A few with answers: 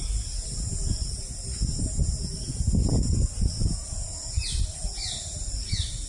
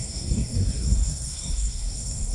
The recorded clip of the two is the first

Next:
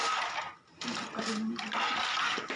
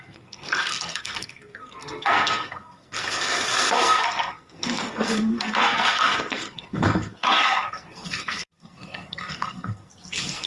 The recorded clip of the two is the first